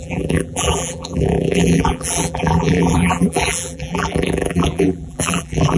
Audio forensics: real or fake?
fake